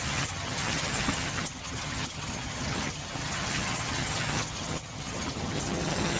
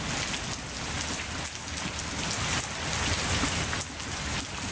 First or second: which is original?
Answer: second